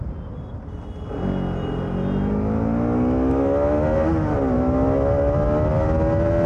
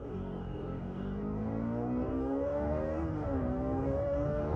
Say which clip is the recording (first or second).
first